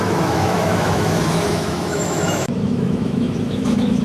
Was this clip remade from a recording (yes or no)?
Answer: yes